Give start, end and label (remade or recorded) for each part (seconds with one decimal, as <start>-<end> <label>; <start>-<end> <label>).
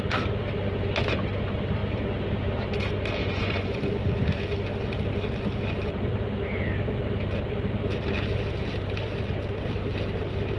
0.0-3.2 recorded; 3.2-3.8 remade; 3.8-10.6 recorded